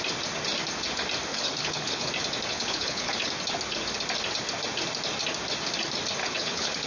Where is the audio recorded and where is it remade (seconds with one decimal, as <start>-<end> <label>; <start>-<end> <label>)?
0.0-1.3 recorded; 1.3-2.1 remade; 2.1-2.5 recorded; 2.5-3.3 remade; 3.3-6.2 recorded; 6.2-6.9 remade